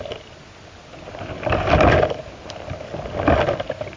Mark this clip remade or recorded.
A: recorded